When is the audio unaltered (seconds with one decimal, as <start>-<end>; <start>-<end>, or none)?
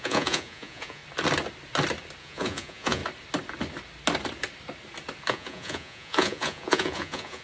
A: 1.0-2.2; 3.0-5.3